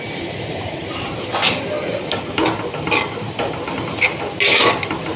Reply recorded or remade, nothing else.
recorded